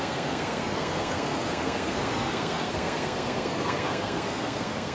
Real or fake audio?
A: fake